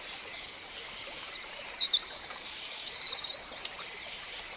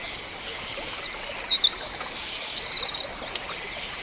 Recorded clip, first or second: second